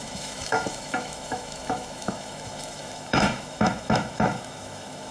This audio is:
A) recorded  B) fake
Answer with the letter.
B